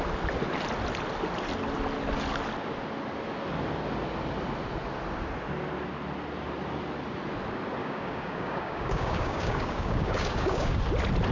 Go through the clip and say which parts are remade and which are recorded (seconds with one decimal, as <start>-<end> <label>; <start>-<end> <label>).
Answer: 0.0-7.8 recorded; 7.8-10.8 remade; 10.8-11.3 recorded